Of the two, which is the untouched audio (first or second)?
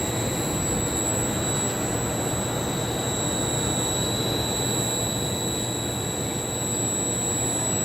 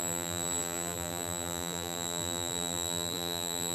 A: first